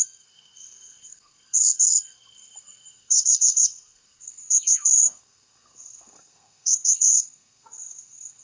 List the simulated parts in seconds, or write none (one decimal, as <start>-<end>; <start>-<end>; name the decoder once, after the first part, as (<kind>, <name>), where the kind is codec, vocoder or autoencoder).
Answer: 0.0-8.4 (codec, SNAC)